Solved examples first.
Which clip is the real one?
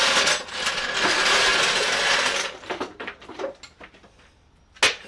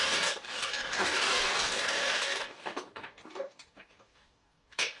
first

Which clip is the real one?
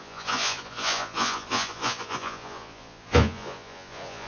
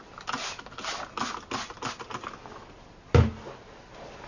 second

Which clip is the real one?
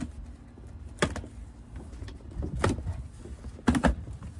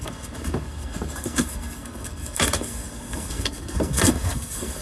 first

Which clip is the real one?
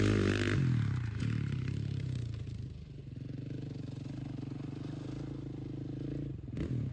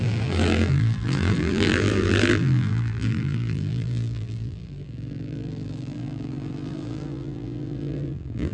first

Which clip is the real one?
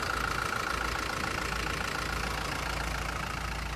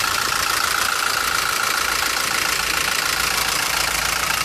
first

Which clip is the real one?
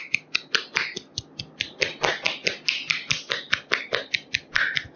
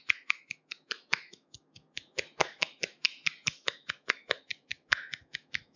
first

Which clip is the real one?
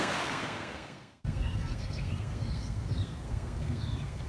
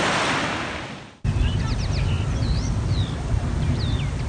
second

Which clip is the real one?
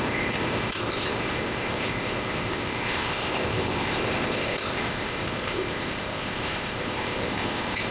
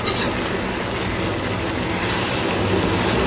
second